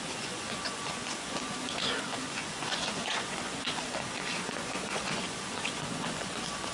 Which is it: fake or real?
fake